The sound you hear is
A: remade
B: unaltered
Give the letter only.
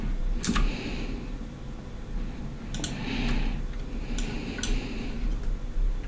B